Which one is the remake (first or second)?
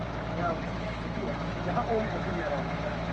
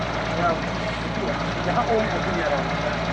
first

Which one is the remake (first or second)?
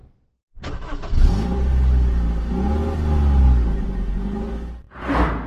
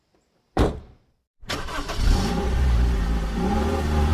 second